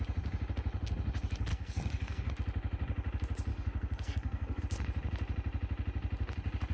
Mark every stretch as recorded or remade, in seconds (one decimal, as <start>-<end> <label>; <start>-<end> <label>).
0.0-1.5 recorded; 1.5-2.3 remade; 2.3-3.5 recorded; 3.5-4.6 remade; 4.6-6.7 recorded